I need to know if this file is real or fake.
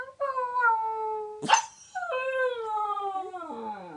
real